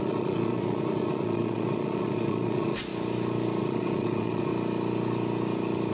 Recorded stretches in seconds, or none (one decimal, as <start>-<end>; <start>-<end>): 2.9-3.6; 4.5-5.9